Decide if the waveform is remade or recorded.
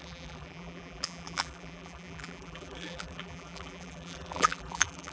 remade